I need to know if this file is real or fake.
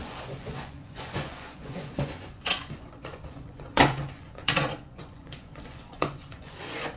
fake